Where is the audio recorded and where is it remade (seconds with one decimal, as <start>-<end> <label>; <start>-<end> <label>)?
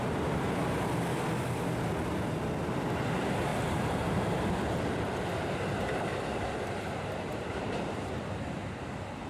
0.0-3.5 recorded; 3.5-4.5 remade; 4.5-6.1 recorded; 6.1-8.1 remade; 8.1-9.3 recorded